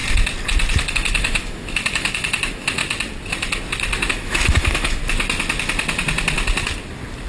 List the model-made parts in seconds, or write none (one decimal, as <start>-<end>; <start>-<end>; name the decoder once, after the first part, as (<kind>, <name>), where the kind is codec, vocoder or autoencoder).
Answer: 0.9-2.8 (autoencoder, DAC-VAE); 4.1-5.0